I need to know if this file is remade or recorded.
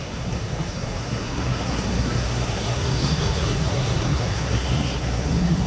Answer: remade